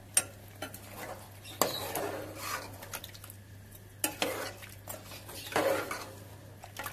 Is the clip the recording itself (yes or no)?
yes